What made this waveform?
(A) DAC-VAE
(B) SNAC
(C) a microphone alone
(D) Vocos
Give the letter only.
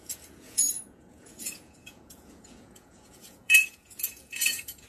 D